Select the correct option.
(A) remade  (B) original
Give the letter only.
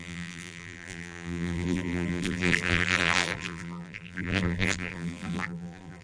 A